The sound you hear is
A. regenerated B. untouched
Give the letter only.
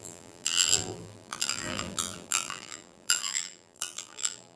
A